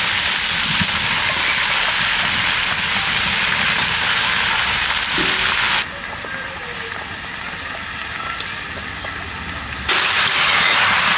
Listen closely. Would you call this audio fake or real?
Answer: real